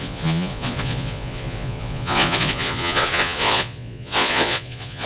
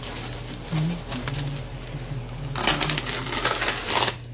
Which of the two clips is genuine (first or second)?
second